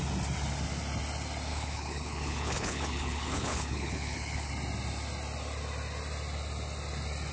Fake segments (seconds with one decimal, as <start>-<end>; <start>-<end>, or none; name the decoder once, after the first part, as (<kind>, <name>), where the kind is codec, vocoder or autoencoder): 1.5-4.5 (codec, HILCodec)